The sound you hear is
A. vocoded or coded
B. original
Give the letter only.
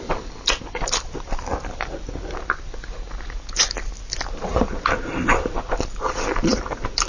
B